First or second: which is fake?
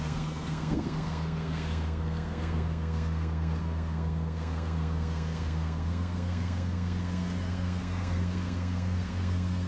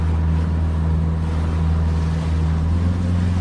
first